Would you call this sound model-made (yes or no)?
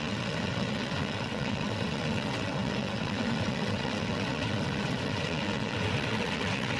yes